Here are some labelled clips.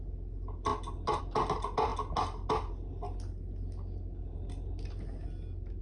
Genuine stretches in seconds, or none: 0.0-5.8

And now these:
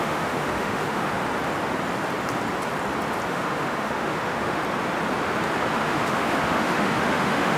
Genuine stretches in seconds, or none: 1.2-3.3; 4.6-5.7

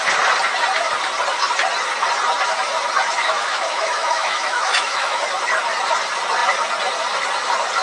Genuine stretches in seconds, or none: 0.0-3.2; 5.2-7.8

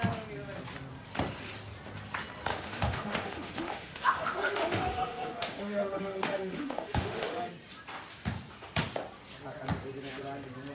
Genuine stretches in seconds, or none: 0.0-2.5; 7.5-10.7

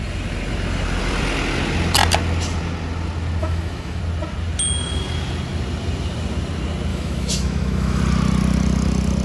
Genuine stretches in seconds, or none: 0.0-3.4; 4.0-6.9; 8.0-9.2

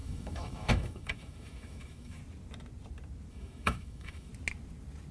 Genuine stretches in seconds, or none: 2.2-3.3; 4.3-5.1

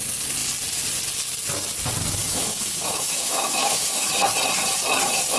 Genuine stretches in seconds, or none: 0.0-2.2; 4.2-5.4